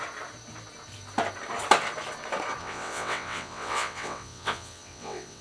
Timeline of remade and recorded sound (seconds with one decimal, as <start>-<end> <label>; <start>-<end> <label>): 0.0-2.6 recorded; 2.6-5.4 remade